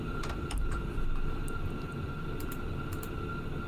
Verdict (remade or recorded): recorded